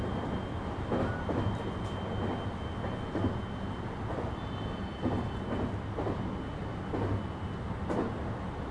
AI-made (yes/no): no